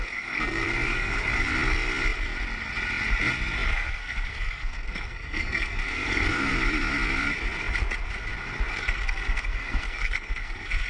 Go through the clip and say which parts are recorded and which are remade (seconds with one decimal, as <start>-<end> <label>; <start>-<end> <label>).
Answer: 0.0-1.1 remade; 1.1-3.7 recorded; 3.7-6.5 remade; 6.5-8.7 recorded; 8.7-10.9 remade

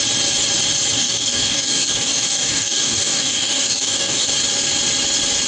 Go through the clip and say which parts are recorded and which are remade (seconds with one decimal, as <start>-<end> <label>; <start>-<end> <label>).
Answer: 0.0-1.0 recorded; 1.0-4.3 remade; 4.3-5.5 recorded

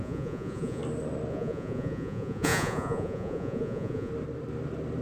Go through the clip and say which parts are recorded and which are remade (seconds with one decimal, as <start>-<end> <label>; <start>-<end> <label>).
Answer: 0.0-0.8 remade; 0.8-1.3 recorded; 1.3-4.1 remade; 4.1-5.0 recorded